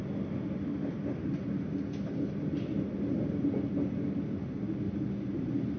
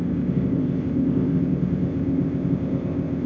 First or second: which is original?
first